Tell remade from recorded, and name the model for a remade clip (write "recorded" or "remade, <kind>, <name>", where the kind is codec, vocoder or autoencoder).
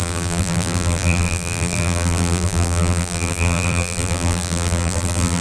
remade, vocoder, BigVGAN v2